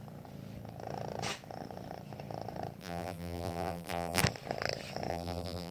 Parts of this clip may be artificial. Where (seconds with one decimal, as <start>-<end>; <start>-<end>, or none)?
2.8-4.2; 5.1-5.7